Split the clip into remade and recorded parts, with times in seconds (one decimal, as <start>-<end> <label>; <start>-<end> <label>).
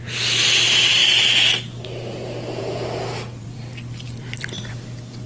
0.0-3.4 recorded; 3.4-4.7 remade; 4.7-5.3 recorded